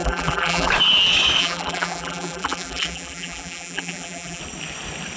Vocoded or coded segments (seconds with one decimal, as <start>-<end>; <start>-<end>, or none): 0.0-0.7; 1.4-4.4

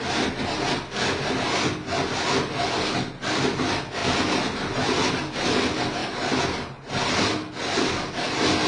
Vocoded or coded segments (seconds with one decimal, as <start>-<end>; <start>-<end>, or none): none

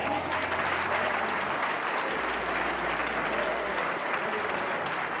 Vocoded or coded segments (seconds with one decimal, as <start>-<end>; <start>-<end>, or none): none